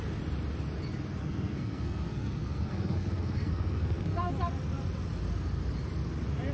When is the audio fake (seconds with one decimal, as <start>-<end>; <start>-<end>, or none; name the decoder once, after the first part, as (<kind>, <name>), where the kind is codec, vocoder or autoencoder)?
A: 1.2-4.3 (codec, SNAC)